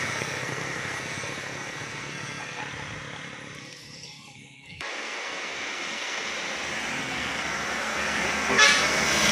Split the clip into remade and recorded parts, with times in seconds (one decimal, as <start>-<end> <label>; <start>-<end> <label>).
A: 0.0-2.6 remade; 2.6-3.6 recorded; 3.6-6.3 remade; 6.3-7.0 recorded; 7.0-9.3 remade